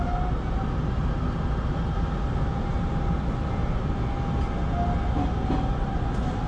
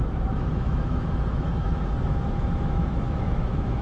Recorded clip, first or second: first